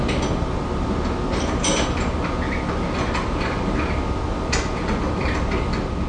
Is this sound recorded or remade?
recorded